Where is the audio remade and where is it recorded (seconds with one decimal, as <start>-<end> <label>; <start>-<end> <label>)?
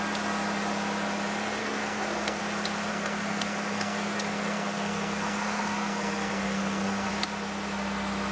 0.0-1.6 recorded; 1.6-2.4 remade; 2.4-2.9 recorded; 2.9-7.1 remade; 7.1-8.3 recorded